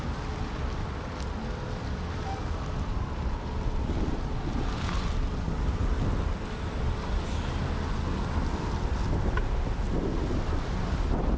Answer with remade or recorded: recorded